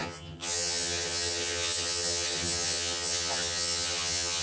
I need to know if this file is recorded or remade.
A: remade